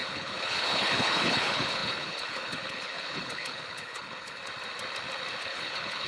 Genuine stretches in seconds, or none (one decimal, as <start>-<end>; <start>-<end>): 4.4-5.4